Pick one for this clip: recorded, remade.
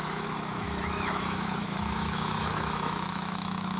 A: remade